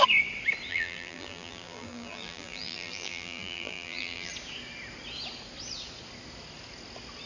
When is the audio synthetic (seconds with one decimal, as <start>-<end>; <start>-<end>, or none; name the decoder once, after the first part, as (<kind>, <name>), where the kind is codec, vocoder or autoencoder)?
0.7-4.3 (vocoder, BigVGAN v2)